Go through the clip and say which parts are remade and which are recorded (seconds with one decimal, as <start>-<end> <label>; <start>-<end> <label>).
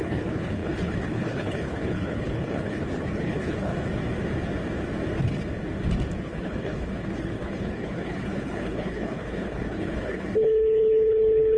0.0-3.7 remade; 3.7-6.2 recorded; 6.2-11.6 remade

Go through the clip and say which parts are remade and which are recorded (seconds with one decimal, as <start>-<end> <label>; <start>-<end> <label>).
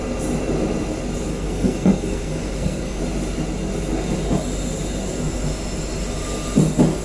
0.0-1.3 recorded; 1.3-3.0 remade; 3.0-7.0 recorded